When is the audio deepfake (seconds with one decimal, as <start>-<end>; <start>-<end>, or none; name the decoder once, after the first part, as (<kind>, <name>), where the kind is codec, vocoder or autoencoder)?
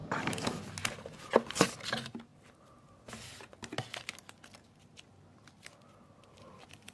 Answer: 0.0-0.6 (codec, DAC)